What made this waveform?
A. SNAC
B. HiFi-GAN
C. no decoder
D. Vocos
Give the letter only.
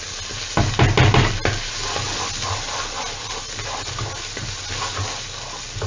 C